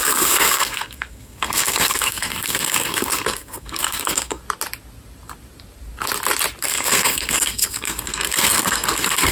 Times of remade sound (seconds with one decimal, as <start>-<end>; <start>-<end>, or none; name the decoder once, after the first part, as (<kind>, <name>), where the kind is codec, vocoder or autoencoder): 0.0-4.4 (codec, SNAC); 6.6-9.3